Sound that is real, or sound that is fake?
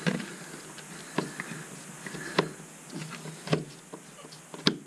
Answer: real